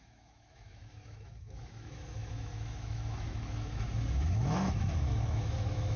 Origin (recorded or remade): remade